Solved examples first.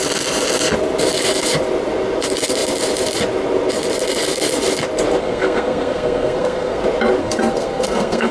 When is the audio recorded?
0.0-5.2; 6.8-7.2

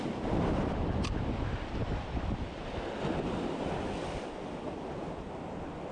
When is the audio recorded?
0.0-5.9

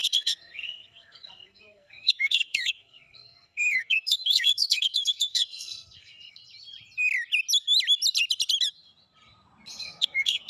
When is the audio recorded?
6.4-9.8

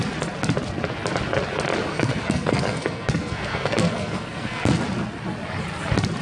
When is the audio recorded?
0.0-1.9; 4.8-6.2

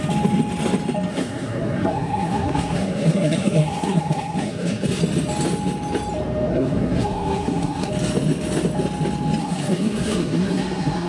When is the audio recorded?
0.0-1.1; 5.0-6.5; 7.9-9.4

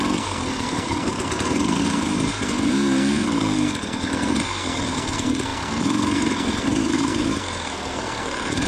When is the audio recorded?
none